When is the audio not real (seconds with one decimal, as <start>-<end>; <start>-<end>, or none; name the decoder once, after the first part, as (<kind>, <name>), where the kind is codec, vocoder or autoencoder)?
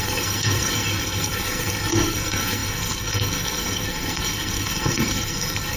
0.0-5.8 (codec, SNAC)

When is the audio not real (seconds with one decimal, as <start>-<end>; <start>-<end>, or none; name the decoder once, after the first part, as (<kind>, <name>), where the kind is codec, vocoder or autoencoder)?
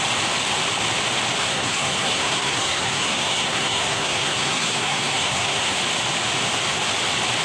1.4-5.8 (codec, SNAC)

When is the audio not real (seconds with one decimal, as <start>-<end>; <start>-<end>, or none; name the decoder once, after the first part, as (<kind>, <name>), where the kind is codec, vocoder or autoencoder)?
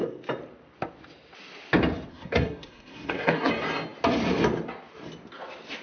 2.1-3.5 (codec, SNAC)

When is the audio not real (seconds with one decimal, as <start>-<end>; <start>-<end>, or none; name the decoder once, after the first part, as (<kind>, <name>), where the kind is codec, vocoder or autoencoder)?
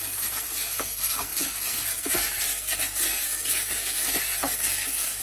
0.0-5.2 (codec, SNAC)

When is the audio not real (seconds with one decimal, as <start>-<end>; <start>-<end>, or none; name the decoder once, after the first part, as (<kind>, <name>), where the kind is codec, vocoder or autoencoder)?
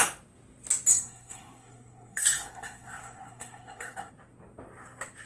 0.9-4.1 (codec, SNAC)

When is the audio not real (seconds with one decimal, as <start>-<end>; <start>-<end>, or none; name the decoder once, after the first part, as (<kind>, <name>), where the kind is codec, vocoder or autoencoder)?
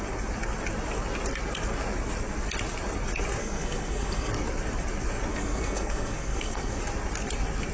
3.4-4.3 (codec, SNAC); 5.3-6.8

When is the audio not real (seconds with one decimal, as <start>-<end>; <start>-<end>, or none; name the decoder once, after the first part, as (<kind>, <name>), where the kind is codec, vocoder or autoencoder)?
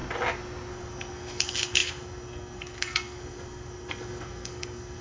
0.7-5.0 (codec, SNAC)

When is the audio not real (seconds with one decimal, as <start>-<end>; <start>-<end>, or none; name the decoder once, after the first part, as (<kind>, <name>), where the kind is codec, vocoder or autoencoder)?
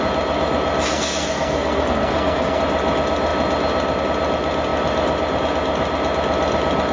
0.9-2.6 (codec, SNAC)